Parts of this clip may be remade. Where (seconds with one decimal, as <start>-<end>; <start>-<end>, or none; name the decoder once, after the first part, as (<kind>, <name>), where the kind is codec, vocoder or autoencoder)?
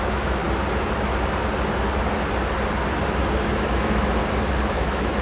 0.0-0.4 (autoencoder, DAC-VAE); 3.5-4.2; 4.7-5.2